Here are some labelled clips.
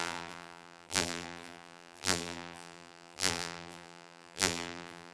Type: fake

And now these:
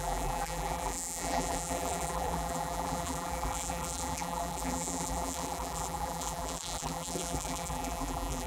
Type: fake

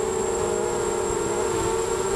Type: real